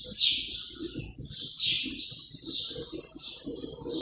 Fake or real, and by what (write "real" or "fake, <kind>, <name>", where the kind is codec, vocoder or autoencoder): real